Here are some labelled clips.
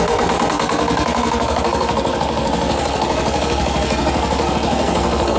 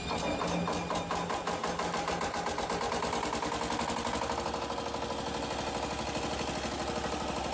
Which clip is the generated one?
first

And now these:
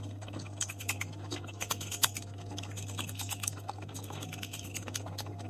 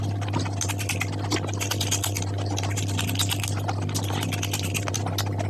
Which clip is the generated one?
first